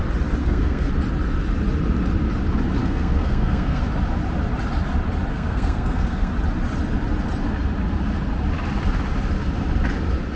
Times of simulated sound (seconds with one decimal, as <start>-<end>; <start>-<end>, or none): 0.4-0.9; 2.8-3.8; 5.3-6.3